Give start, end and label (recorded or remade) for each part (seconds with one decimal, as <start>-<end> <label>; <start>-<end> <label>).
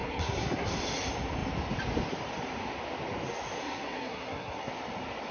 0.0-0.8 remade; 0.8-3.6 recorded; 3.6-4.7 remade; 4.7-5.3 recorded